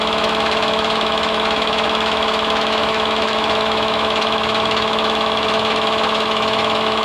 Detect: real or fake fake